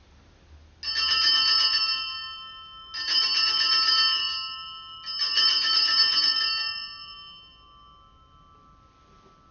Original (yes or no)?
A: yes